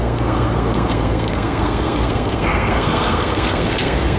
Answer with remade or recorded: remade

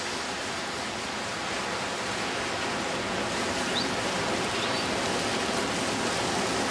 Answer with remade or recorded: recorded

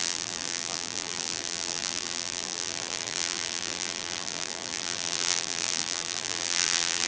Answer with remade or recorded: remade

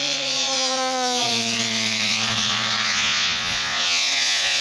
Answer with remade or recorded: remade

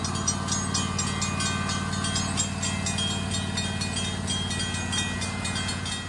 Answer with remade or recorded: recorded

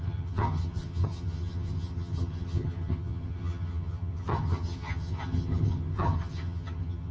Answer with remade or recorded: remade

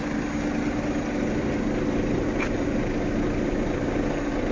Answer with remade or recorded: recorded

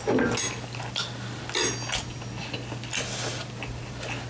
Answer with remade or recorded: recorded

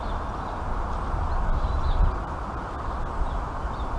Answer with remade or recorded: recorded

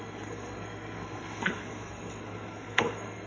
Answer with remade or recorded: remade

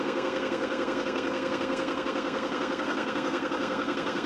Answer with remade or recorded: remade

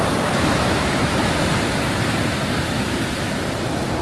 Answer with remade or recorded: remade